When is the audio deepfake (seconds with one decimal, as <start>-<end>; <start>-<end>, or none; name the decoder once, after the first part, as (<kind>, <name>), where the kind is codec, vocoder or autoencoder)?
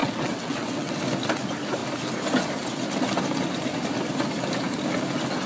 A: 0.0-1.0 (vocoder, WaveNeXt)